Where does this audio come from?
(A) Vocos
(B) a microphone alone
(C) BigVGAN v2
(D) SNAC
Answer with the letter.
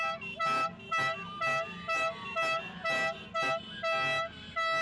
B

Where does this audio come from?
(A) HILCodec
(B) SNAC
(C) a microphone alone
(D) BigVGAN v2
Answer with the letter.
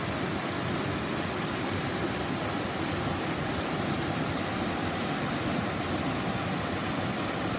C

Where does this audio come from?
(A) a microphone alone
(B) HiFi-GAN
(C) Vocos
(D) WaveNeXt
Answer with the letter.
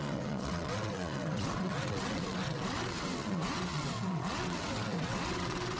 D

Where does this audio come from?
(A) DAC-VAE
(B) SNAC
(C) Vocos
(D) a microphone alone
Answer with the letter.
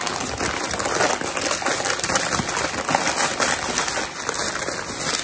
D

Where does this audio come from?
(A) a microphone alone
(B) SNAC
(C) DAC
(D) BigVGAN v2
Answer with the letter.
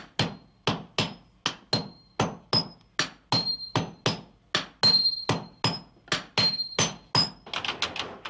A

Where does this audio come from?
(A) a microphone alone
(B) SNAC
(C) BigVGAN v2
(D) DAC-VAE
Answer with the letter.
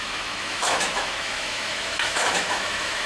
D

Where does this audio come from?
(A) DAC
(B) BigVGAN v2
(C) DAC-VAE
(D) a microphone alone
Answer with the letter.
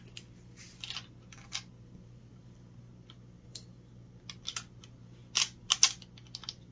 D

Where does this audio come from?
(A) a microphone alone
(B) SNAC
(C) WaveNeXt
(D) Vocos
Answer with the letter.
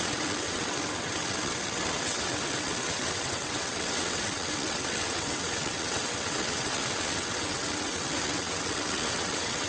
C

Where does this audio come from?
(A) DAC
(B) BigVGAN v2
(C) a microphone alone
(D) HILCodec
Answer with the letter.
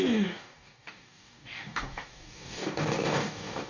A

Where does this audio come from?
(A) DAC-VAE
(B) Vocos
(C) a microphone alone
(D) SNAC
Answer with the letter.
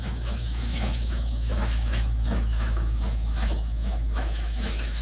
A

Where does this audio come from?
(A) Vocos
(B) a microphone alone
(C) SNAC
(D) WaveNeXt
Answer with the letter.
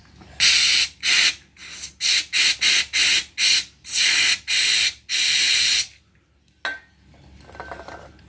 B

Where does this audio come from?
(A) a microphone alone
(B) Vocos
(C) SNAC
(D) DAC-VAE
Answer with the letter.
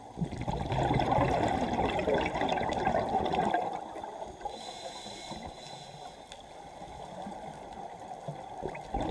A